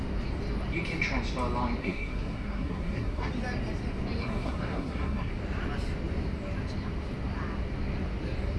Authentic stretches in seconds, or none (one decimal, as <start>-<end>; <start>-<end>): 0.0-1.8; 3.3-4.2; 5.3-8.6